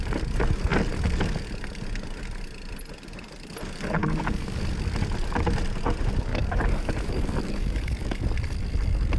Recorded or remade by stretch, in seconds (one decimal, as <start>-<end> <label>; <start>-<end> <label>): 0.0-4.0 recorded; 4.0-4.6 remade; 4.6-6.3 recorded; 6.3-8.2 remade; 8.2-9.2 recorded